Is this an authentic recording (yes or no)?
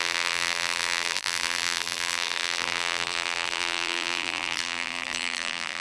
no